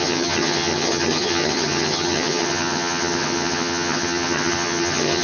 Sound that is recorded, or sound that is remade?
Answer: remade